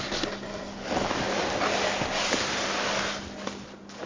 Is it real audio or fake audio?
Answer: real